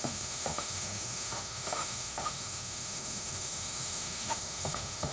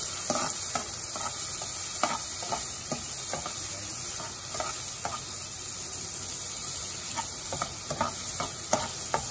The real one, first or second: second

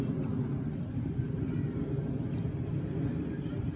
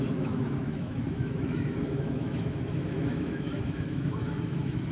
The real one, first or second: first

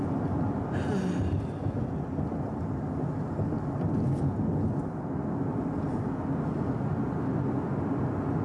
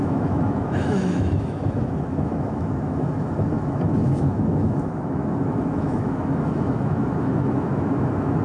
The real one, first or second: first